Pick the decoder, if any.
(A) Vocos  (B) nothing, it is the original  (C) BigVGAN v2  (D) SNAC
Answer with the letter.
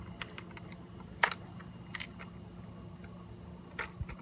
B